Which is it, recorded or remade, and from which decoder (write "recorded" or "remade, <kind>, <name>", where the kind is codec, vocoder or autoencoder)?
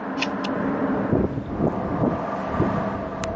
recorded